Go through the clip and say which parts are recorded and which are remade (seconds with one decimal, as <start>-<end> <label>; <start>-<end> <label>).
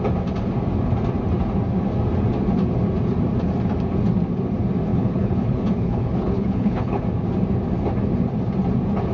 0.0-4.9 recorded; 4.9-7.0 remade; 7.0-9.1 recorded